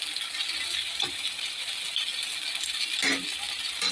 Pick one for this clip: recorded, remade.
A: recorded